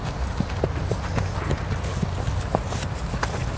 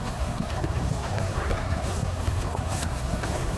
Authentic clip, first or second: first